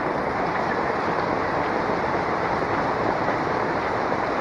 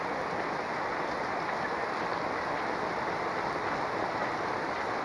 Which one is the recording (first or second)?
second